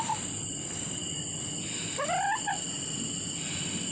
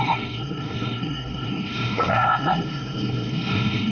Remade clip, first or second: second